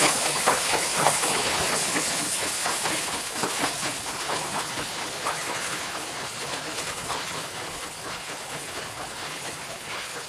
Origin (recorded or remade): remade